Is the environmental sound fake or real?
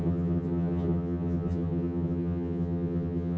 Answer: fake